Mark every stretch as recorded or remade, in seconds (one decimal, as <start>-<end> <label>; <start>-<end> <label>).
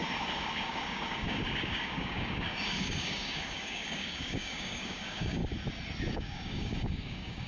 0.0-5.4 remade; 5.4-6.1 recorded; 6.1-7.5 remade